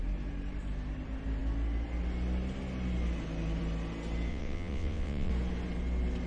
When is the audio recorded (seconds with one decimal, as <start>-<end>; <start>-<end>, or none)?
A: 0.0-4.3; 5.3-6.3